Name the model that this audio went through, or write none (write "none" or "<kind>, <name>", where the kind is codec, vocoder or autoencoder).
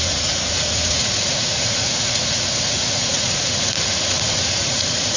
vocoder, Vocos